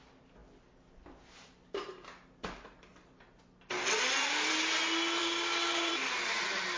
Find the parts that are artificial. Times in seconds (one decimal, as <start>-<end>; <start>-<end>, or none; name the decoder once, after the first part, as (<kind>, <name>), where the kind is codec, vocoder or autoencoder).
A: 5.2-5.9 (codec, DAC)